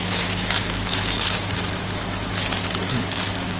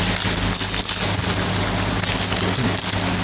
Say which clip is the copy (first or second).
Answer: first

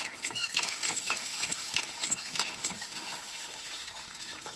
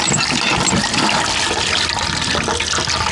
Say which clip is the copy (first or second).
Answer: first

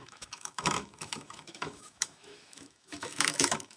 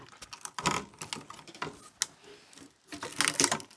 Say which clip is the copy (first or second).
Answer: first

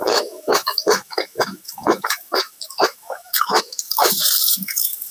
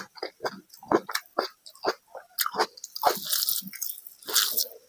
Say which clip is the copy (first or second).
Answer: first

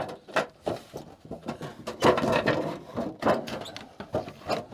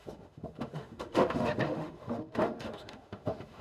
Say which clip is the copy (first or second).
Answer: second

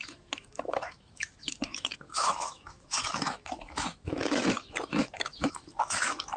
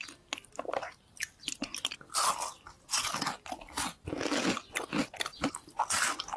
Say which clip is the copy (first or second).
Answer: first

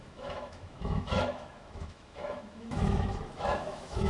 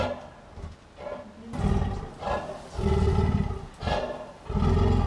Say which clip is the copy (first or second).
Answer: first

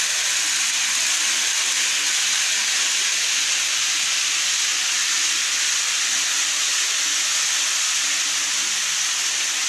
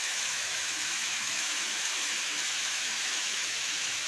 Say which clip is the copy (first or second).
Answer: second